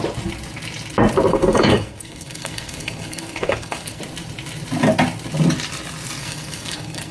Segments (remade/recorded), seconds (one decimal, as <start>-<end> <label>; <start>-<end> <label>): 0.0-1.3 recorded; 1.3-4.0 remade; 4.0-6.2 recorded; 6.2-7.1 remade